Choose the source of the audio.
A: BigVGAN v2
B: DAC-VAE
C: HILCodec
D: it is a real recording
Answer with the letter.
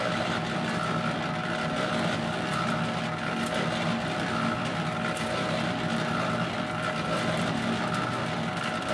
D